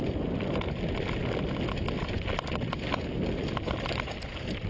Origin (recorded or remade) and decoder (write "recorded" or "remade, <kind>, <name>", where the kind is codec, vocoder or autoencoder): recorded